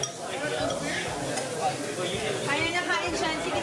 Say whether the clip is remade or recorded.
remade